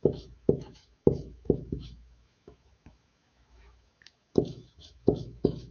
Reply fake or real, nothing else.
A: fake